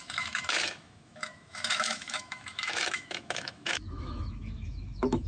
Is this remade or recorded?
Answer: remade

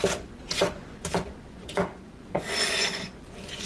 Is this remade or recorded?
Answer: remade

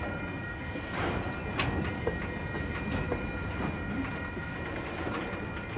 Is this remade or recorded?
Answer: recorded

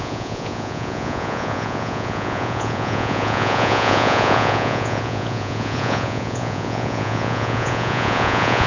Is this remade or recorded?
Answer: remade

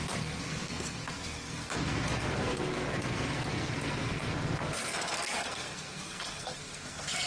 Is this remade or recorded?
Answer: remade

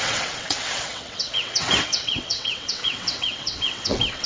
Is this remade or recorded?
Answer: remade